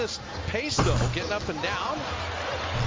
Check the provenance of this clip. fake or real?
real